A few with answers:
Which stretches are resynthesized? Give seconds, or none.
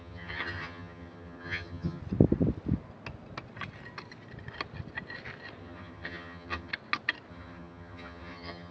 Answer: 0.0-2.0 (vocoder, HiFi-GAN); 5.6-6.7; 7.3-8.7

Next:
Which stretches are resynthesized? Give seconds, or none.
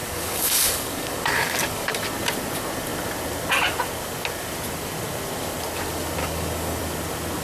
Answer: 0.0-1.9 (codec, DAC); 6.2-6.8